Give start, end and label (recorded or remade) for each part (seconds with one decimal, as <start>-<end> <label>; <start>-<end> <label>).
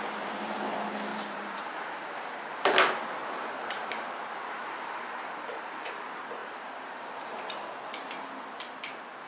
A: 0.0-1.1 recorded; 1.1-2.4 remade; 2.4-3.2 recorded; 3.2-5.9 remade; 5.9-6.4 recorded; 6.4-7.5 remade; 7.5-9.3 recorded